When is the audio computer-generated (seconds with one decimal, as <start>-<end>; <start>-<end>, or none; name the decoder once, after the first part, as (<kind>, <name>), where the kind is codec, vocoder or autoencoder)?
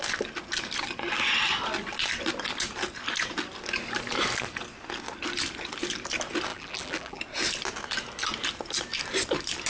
6.5-7.2 (vocoder, BigVGAN v2)